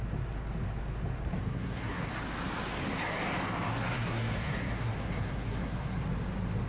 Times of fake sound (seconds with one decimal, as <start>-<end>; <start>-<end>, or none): 1.5-2.1; 3.9-6.0